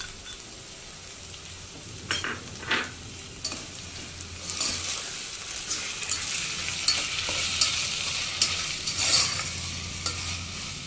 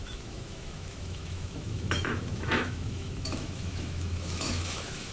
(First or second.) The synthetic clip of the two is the second